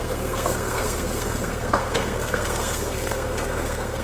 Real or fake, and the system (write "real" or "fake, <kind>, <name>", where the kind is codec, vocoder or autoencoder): fake, codec, SNAC